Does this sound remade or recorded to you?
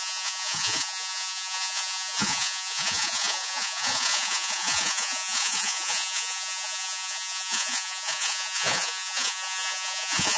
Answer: remade